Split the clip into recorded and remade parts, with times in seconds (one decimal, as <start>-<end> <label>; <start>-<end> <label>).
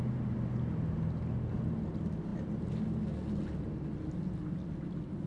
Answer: 0.0-5.3 recorded